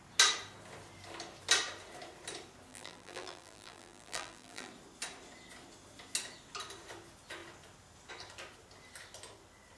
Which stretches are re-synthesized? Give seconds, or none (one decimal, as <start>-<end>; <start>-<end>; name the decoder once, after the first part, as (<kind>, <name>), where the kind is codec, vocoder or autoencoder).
2.7-4.7 (vocoder, BigVGAN v2)